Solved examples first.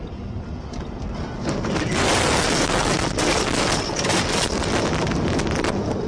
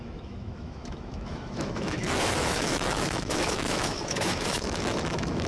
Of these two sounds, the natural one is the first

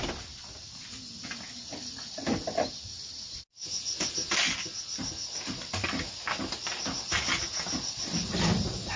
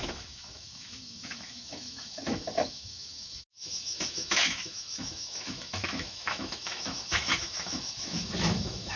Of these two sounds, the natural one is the first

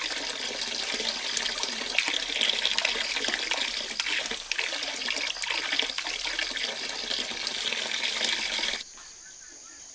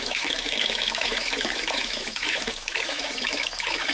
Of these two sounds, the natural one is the first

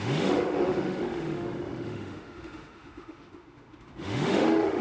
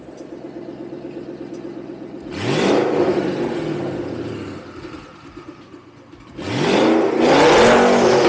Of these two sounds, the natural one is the second